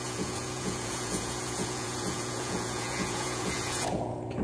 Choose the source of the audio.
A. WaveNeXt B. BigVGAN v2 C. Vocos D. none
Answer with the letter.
C